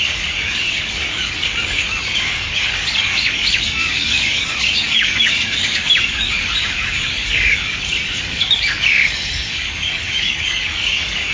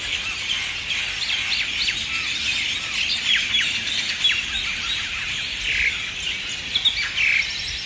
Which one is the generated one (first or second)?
first